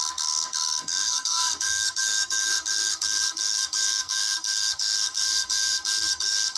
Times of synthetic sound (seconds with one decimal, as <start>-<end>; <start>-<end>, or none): 0.0-6.6